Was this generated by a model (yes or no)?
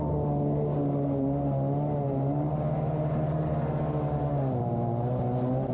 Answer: no